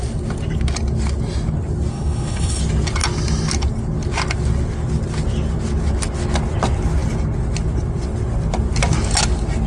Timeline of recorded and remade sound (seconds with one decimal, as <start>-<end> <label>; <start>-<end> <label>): 0.0-1.9 recorded; 1.9-2.6 remade; 2.6-9.7 recorded